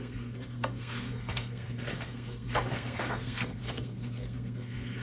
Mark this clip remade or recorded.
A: remade